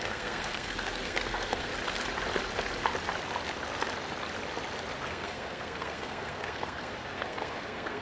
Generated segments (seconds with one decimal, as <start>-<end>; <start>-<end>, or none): 0.0-1.7; 5.0-8.0